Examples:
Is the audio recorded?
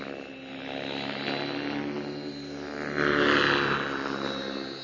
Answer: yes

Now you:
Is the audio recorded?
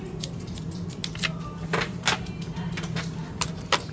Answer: yes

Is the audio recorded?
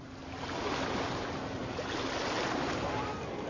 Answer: yes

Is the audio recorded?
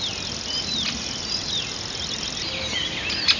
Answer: yes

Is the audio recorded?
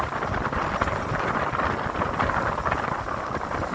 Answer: yes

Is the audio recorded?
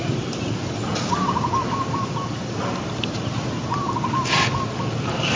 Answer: yes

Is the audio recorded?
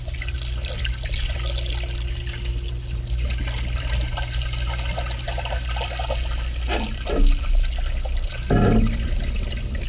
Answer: yes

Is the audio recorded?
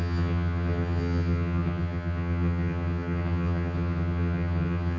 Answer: no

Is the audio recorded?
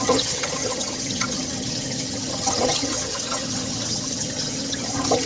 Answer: no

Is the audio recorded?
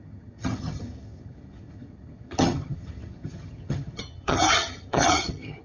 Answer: no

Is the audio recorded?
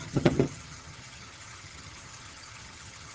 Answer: no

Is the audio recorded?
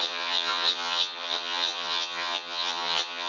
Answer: no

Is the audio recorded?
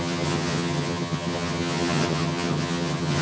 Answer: no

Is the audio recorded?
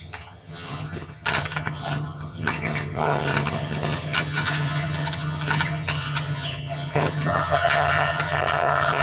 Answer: no